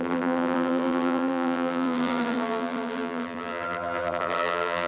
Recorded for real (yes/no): no